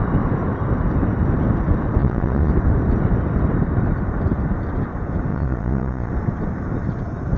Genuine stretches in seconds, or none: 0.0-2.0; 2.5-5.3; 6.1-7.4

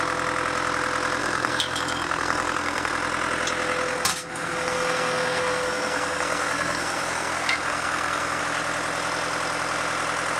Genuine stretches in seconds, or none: 0.0-1.2; 2.9-4.1; 8.4-10.4

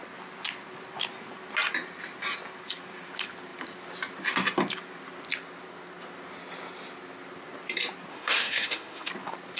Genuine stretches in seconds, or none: 0.0-8.1; 9.1-9.6

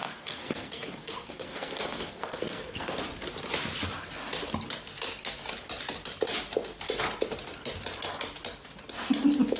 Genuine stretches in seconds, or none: 3.0-9.6

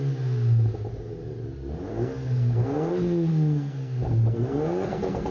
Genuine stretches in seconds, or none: 0.0-1.9; 2.9-3.3

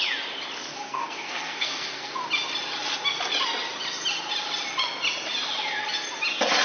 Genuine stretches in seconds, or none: 0.0-0.7; 2.1-6.6

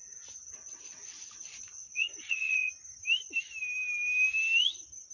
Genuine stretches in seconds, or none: 2.7-5.1